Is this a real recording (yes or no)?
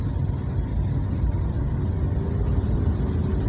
yes